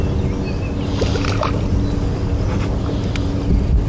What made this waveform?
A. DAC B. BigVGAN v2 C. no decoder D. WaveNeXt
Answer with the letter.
C